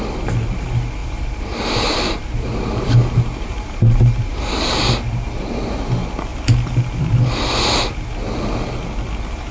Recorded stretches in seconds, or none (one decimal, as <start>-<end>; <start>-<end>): 0.0-1.0; 4.8-9.5